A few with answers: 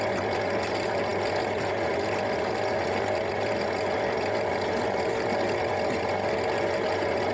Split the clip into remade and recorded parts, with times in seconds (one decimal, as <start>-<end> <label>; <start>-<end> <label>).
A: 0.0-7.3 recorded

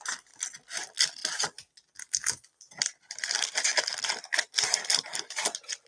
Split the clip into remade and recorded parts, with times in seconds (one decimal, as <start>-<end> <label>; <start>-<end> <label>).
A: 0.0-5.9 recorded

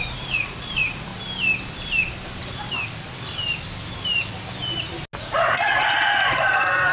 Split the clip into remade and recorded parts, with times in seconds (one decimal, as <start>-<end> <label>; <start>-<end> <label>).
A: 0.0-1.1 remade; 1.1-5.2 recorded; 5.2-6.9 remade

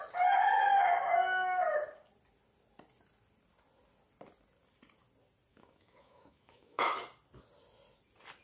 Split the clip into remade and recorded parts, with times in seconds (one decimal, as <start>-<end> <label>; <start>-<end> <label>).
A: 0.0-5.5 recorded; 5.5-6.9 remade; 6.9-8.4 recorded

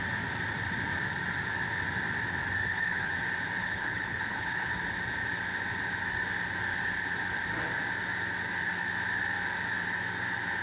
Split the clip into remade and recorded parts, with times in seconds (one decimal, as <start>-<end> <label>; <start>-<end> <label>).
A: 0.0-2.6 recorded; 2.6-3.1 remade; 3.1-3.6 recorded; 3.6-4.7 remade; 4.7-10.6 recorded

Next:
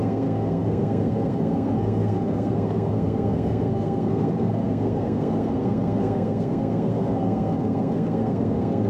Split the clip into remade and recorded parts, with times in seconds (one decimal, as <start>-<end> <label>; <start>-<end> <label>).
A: 0.0-8.9 remade